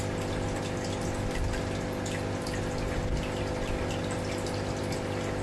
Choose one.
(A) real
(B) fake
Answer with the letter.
A